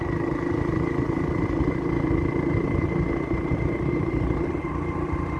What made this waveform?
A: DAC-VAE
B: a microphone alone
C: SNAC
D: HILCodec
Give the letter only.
B